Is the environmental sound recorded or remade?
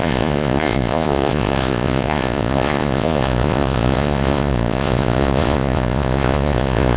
remade